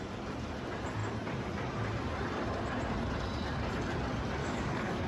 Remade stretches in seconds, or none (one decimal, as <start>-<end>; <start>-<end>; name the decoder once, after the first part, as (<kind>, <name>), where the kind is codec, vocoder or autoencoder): 4.4-5.1 (codec, DAC)